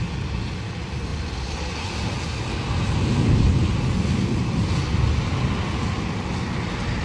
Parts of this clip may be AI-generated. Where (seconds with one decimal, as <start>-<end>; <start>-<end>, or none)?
none